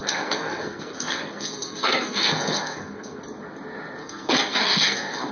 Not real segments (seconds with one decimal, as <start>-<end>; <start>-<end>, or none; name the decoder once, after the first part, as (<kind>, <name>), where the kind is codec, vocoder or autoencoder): 0.0-3.2 (codec, SNAC); 4.0-5.3